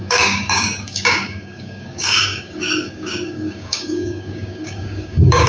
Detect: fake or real fake